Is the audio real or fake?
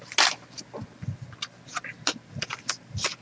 real